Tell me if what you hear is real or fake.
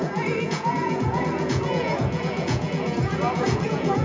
fake